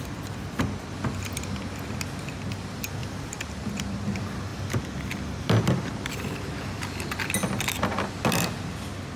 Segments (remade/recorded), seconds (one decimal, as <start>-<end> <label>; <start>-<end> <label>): 0.0-3.0 recorded; 3.0-3.8 remade; 3.8-9.2 recorded

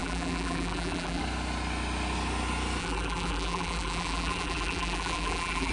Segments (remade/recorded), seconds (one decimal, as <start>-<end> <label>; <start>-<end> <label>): 0.0-1.2 remade; 1.2-2.8 recorded; 2.8-5.7 remade

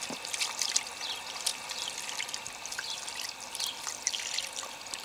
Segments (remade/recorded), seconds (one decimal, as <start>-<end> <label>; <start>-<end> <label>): 0.0-5.0 recorded

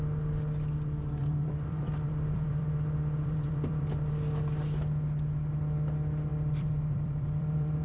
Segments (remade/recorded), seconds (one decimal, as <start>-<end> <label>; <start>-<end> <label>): 0.0-1.2 recorded; 1.2-4.1 remade; 4.1-6.3 recorded; 6.3-7.8 remade

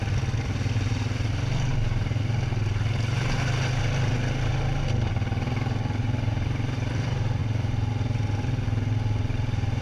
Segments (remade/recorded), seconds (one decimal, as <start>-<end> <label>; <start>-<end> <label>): 0.0-9.8 recorded

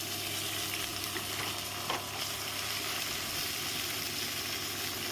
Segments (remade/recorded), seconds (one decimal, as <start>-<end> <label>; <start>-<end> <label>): 0.0-0.9 recorded; 0.9-4.0 remade; 4.0-5.1 recorded

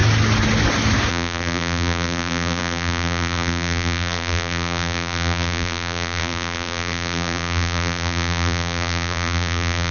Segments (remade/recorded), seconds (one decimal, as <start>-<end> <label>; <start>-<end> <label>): 0.0-1.1 recorded; 1.1-9.9 remade

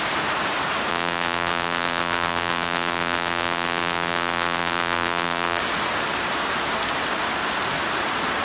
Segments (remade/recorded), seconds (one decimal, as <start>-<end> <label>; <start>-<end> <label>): 0.0-0.9 recorded; 0.9-5.6 remade; 5.6-8.4 recorded